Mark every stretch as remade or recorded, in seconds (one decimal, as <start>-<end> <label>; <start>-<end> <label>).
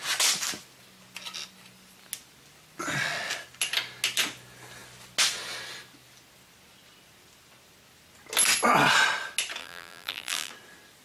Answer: 0.0-9.6 recorded; 9.6-10.5 remade; 10.5-11.0 recorded